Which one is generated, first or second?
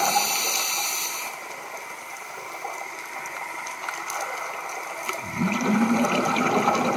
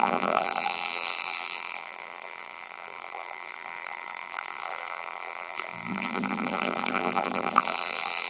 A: second